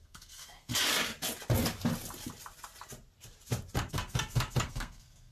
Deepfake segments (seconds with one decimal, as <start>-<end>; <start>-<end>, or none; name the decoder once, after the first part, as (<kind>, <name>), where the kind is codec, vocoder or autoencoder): 0.0-0.7 (codec, SNAC); 3.9-5.3

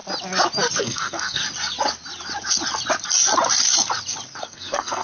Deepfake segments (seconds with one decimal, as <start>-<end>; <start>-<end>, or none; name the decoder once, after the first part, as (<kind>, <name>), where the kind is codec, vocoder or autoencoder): 0.8-1.4 (codec, SNAC); 4.4-5.0

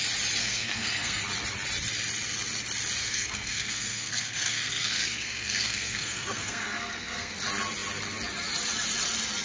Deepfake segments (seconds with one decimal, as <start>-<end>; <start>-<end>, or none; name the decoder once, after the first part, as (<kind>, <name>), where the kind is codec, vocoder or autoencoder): 0.4-1.2 (codec, SNAC); 3.0-7.3

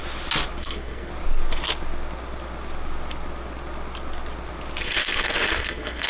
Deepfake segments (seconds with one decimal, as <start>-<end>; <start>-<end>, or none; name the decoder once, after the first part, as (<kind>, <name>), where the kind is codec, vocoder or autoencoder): 0.6-1.1 (codec, SNAC); 4.8-6.1

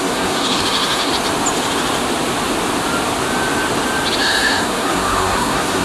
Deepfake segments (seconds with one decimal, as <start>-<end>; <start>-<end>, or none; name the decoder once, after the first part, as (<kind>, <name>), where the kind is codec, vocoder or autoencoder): 0.0-1.1 (codec, SNAC); 4.2-5.8

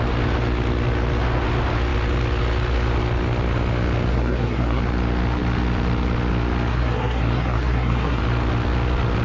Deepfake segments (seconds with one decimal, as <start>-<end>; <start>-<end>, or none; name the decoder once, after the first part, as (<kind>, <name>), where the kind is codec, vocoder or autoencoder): 4.1-4.8 (codec, SNAC); 6.7-8.2

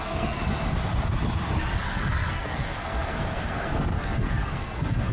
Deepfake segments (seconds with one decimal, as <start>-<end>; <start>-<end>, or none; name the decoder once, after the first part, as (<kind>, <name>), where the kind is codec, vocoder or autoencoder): 0.0-0.4 (codec, SNAC); 1.8-5.1